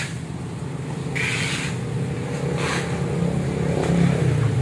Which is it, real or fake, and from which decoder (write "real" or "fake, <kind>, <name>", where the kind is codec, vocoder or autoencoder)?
real